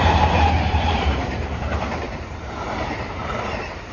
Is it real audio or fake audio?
fake